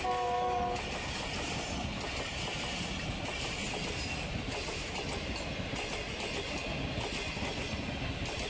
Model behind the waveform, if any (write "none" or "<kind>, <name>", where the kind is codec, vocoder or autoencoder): none